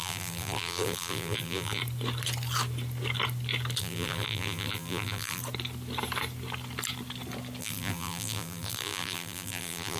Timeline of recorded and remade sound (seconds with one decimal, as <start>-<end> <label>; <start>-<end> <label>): 0.0-1.8 remade; 1.8-3.8 recorded; 3.8-5.4 remade; 5.4-7.6 recorded; 7.6-10.0 remade